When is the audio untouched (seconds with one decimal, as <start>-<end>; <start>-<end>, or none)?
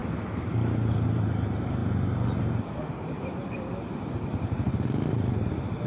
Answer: 1.8-2.4